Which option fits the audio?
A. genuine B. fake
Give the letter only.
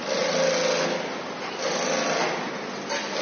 A